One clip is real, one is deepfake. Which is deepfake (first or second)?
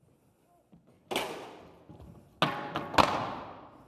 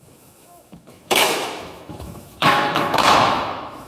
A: second